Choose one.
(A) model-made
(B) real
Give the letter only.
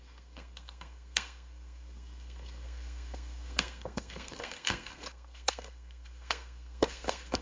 A